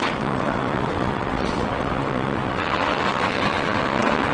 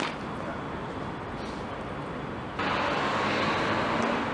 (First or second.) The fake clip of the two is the first